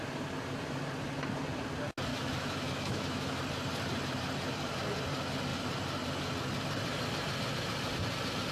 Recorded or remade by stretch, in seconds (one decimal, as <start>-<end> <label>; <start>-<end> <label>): 0.0-2.1 recorded; 2.1-3.4 remade; 3.4-8.5 recorded